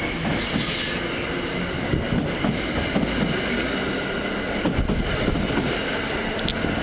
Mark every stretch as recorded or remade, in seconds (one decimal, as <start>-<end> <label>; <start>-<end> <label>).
0.0-6.8 recorded